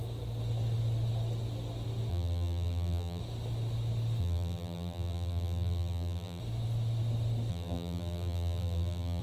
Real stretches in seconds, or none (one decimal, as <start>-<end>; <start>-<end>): 0.0-2.1; 3.2-4.2; 6.4-7.5